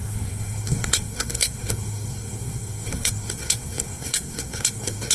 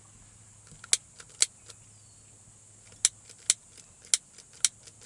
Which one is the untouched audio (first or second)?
second